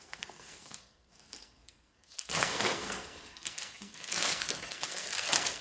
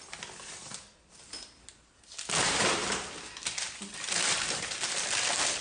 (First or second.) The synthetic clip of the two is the first